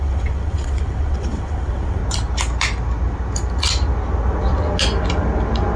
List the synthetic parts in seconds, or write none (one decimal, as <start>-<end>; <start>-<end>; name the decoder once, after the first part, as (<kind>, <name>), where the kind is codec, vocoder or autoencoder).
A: 0.0-2.0 (vocoder, WaveNeXt)